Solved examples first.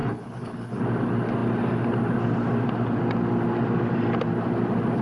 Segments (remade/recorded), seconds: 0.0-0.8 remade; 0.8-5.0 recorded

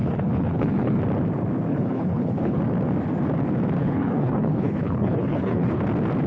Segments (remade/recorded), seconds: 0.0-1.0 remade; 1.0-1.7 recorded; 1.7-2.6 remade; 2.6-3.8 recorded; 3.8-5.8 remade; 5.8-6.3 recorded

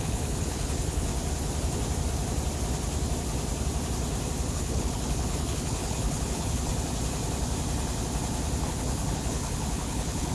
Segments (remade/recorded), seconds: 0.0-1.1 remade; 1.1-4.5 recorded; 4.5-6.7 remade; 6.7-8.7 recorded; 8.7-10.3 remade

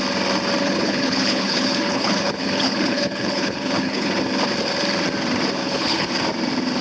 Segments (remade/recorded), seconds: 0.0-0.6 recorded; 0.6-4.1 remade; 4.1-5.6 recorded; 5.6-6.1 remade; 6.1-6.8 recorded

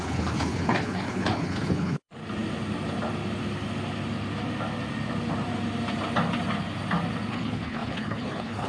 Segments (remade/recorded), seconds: 0.0-2.2 remade; 2.2-7.3 recorded; 7.3-8.7 remade